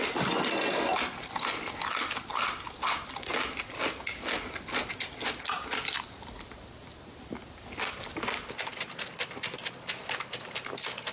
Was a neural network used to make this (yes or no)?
no